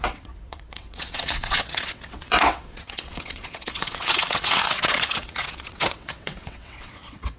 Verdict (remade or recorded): remade